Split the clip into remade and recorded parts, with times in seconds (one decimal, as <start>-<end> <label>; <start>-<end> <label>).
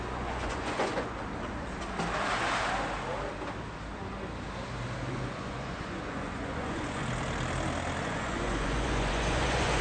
0.0-1.2 remade; 1.2-5.1 recorded; 5.1-7.0 remade; 7.0-8.0 recorded; 8.0-9.8 remade